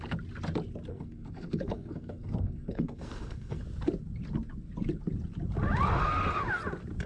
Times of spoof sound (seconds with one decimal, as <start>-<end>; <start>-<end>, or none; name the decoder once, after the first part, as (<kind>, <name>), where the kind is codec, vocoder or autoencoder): 0.9-3.6 (codec, SNAC)